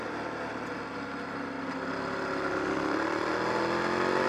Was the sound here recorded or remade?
recorded